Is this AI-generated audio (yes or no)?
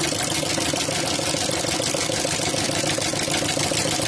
no